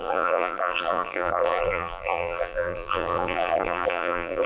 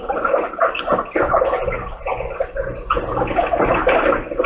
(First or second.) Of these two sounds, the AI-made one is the first